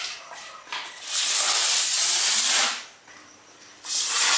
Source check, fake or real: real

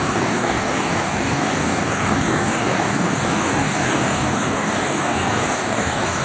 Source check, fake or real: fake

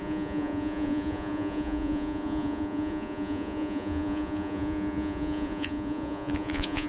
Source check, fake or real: fake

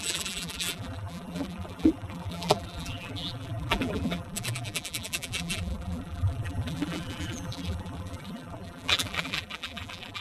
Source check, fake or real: fake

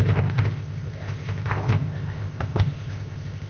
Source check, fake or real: fake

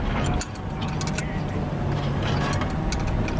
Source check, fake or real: real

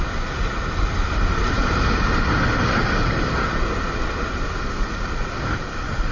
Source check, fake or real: real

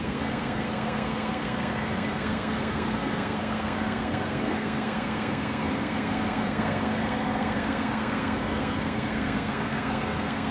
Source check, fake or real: fake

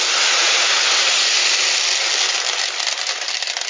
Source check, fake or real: real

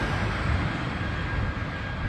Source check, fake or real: real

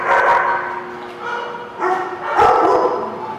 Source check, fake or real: real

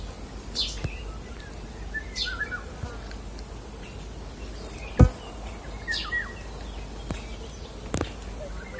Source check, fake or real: real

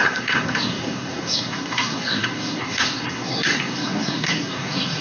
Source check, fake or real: fake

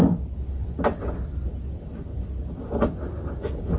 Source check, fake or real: real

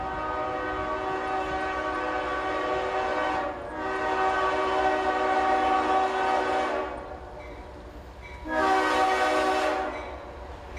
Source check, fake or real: real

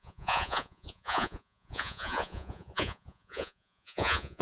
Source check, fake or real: fake